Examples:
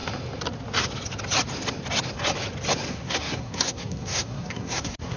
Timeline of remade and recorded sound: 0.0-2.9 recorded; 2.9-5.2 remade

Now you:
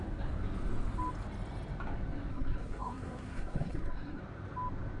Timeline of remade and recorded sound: 0.0-2.3 recorded; 2.3-4.2 remade; 4.2-5.0 recorded

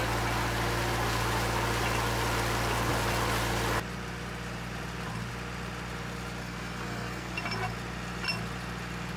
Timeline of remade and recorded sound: 0.0-6.4 recorded; 6.4-7.3 remade; 7.3-9.2 recorded

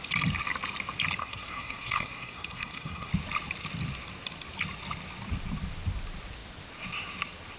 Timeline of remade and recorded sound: 0.0-1.2 recorded; 1.2-3.1 remade; 3.1-7.6 recorded

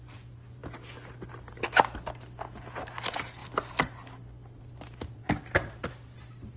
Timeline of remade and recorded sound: 0.0-6.6 recorded

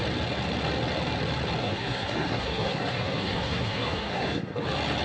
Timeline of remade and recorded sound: 0.0-1.6 recorded; 1.6-4.6 remade; 4.6-5.0 recorded